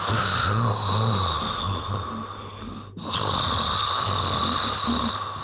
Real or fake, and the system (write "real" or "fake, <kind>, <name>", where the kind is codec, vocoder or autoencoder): real